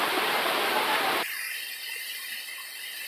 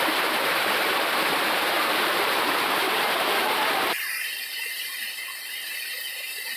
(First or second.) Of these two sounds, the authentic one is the first